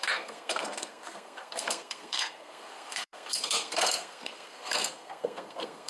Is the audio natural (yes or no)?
no